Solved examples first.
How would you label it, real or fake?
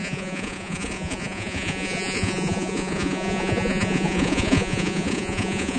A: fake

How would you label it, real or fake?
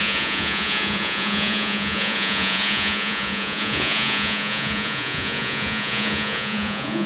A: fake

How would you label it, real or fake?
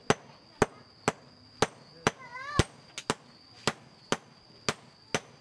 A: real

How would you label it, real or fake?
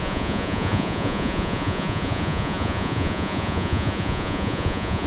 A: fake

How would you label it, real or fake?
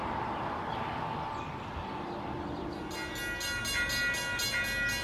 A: real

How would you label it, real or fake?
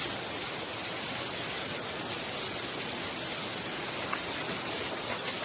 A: real